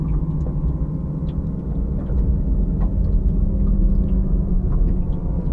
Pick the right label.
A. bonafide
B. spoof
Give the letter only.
A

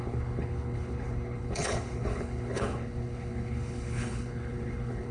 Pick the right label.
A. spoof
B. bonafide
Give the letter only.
A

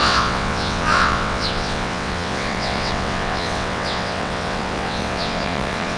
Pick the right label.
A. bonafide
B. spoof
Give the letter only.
B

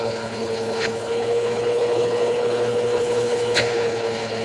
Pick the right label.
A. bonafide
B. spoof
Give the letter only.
B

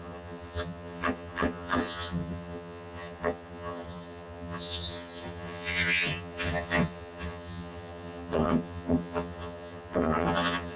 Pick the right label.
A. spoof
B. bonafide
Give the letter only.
A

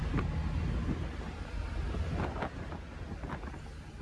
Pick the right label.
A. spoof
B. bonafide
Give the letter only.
B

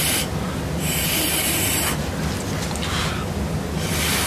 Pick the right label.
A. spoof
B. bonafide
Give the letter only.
B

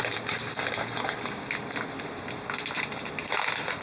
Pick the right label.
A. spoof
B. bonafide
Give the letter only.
B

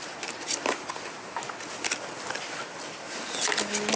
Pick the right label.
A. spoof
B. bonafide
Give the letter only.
B